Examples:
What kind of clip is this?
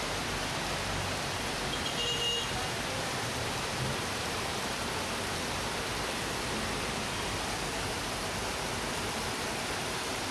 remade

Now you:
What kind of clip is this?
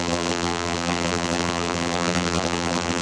remade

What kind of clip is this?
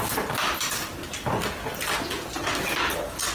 recorded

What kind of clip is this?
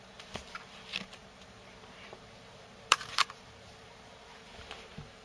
remade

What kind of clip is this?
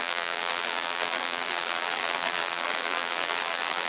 remade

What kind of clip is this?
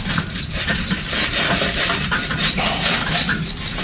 remade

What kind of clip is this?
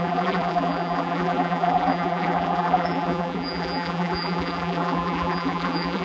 remade